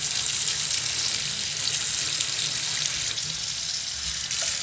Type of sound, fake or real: real